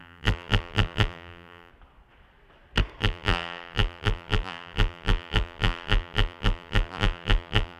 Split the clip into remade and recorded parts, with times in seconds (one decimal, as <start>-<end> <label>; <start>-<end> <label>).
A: 0.0-1.7 remade; 1.7-3.0 recorded; 3.0-7.8 remade